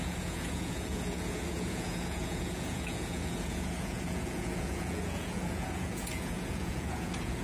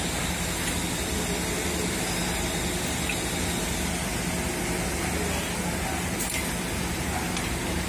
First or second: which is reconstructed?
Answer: first